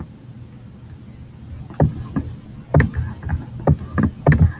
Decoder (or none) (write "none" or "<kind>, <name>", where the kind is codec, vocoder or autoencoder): none